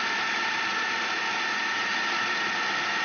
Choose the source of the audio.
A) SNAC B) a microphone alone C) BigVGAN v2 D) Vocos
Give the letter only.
B